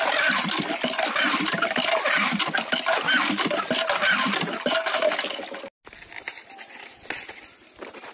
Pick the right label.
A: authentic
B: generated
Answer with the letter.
A